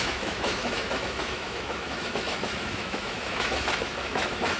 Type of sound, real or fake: fake